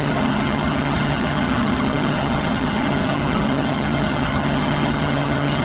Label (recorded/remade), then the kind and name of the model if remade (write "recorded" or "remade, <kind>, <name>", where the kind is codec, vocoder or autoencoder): remade, vocoder, HiFi-GAN